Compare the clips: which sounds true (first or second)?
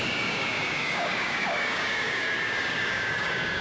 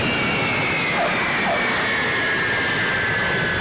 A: second